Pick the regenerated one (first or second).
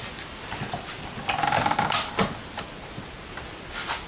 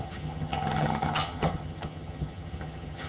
second